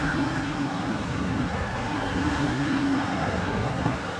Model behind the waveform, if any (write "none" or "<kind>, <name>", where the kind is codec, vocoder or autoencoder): codec, SNAC